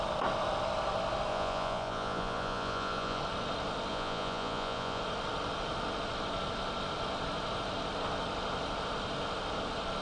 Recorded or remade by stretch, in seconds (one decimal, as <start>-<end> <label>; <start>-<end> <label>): 0.0-1.3 recorded; 1.3-3.2 remade; 3.2-3.9 recorded; 3.9-5.0 remade; 5.0-10.0 recorded